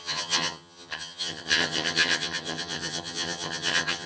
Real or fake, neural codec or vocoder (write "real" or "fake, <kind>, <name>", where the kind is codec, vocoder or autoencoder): fake, vocoder, HiFi-GAN